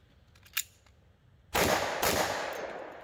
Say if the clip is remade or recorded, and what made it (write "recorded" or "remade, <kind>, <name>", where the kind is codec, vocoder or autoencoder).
recorded